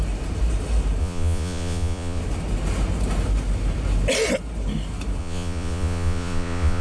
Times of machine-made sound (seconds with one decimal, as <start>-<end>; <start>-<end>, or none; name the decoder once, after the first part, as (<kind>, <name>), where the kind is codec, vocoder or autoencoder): 1.0-2.2 (vocoder, Vocos); 5.2-6.8